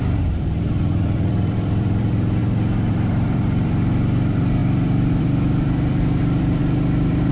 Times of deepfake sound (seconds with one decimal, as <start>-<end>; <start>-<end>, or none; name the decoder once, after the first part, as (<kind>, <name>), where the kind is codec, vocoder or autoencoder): 0.0-2.4 (vocoder, BigVGAN v2); 2.9-6.6